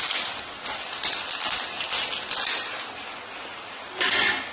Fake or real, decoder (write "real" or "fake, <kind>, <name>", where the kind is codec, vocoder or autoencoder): real